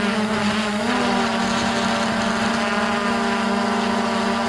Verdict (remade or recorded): recorded